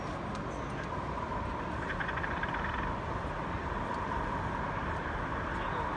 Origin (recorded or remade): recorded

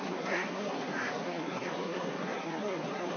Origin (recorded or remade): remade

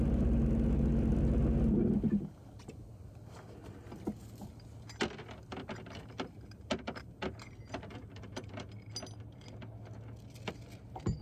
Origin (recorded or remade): recorded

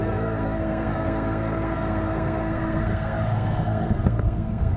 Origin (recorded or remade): remade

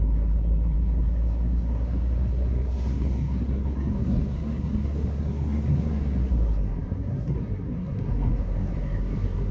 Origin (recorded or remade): remade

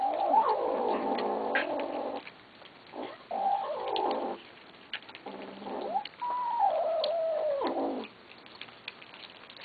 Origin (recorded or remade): recorded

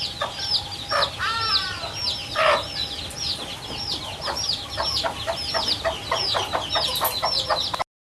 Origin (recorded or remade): recorded